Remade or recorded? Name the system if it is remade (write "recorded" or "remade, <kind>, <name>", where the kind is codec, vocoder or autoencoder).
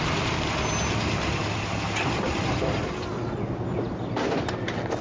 recorded